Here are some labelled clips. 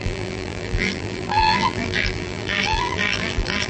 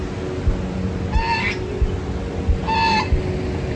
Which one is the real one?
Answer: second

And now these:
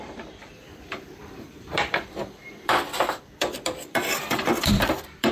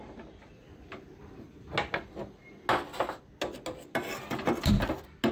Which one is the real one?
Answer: second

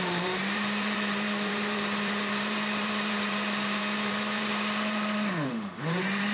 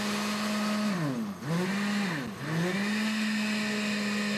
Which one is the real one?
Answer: second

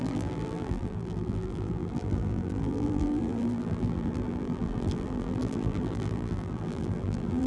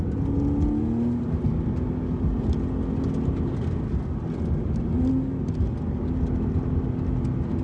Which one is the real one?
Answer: second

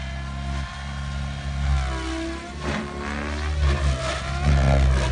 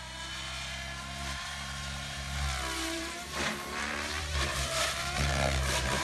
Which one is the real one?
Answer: first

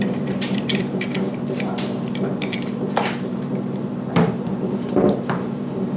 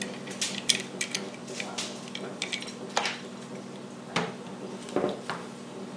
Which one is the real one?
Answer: second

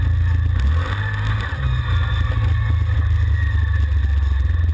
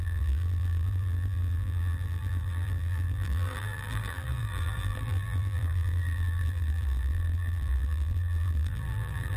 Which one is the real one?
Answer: first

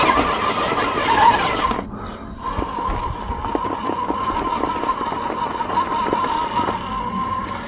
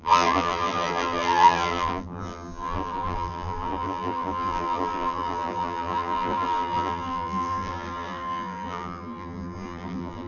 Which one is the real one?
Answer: first